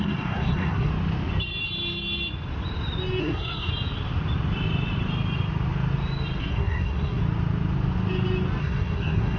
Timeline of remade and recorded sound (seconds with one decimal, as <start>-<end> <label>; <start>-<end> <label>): 0.0-0.9 remade; 0.9-3.2 recorded; 3.2-3.7 remade; 3.7-6.4 recorded; 6.4-7.2 remade; 7.2-8.6 recorded; 8.6-9.4 remade